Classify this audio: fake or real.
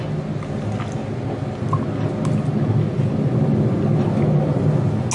real